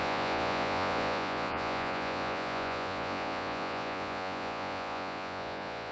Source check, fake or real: fake